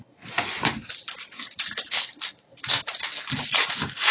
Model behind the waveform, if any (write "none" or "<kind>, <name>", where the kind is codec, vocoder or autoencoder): vocoder, BigVGAN v2